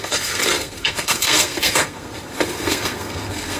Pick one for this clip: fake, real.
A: fake